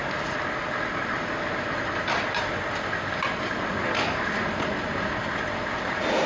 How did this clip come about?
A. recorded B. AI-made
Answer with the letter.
A